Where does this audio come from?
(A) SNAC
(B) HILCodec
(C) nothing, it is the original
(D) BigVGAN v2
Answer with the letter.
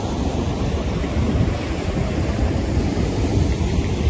C